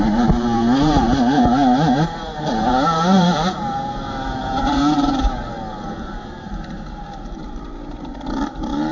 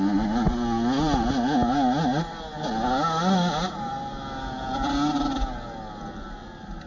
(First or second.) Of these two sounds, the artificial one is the first